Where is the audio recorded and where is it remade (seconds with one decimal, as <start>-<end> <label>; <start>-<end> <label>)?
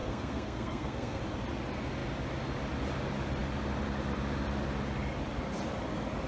0.0-1.2 remade; 1.2-6.3 recorded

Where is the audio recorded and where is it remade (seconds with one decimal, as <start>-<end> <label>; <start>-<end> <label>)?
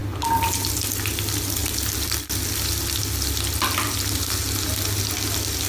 0.0-5.7 recorded